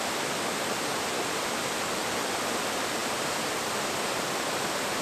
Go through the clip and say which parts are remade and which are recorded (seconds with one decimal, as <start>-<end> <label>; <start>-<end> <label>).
0.0-5.0 recorded